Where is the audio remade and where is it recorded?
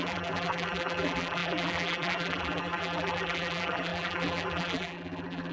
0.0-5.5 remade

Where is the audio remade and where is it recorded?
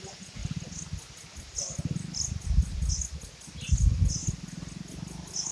0.0-0.4 remade; 0.4-3.7 recorded; 3.7-4.2 remade; 4.2-5.5 recorded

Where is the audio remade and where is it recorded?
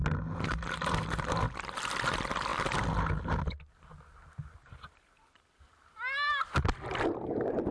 0.0-7.7 recorded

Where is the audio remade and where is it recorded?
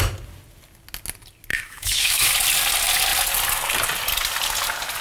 0.0-1.5 recorded; 1.5-2.3 remade; 2.3-5.0 recorded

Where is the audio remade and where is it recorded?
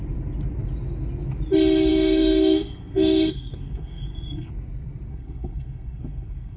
0.0-1.9 recorded; 1.9-4.5 remade; 4.5-5.1 recorded; 5.1-6.6 remade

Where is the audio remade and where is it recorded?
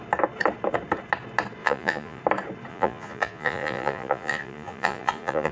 0.0-1.6 recorded; 1.6-2.2 remade; 2.2-2.7 recorded; 2.7-5.5 remade